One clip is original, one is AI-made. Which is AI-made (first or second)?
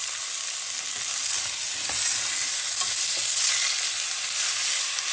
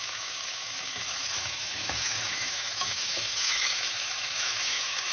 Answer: second